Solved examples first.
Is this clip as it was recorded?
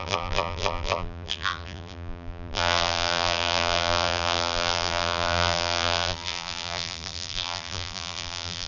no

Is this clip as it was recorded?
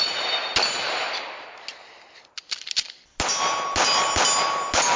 yes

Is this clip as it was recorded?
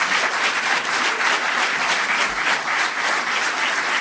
yes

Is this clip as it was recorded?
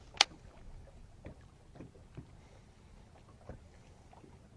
yes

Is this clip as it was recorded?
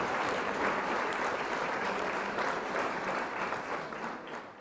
no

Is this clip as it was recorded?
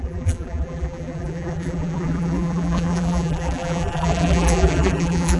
no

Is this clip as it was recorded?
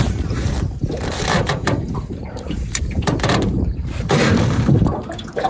no